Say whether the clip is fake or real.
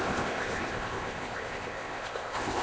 fake